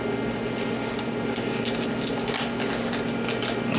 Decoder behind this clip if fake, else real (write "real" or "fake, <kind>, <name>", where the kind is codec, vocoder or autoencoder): real